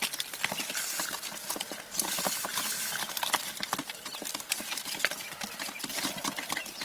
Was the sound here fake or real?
real